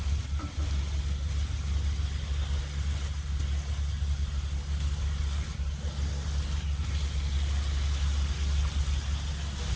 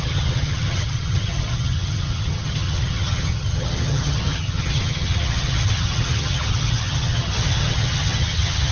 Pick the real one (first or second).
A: first